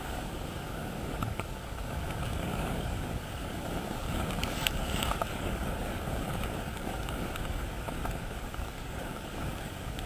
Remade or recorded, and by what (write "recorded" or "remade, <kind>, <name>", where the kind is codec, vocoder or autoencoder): remade, codec, DAC